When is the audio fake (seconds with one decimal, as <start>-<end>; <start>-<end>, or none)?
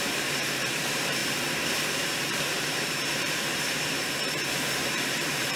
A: 0.0-1.2; 1.7-5.6